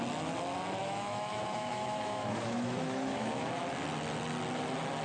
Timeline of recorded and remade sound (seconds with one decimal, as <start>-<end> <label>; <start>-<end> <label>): 0.0-0.8 recorded; 0.8-3.5 remade; 3.5-5.0 recorded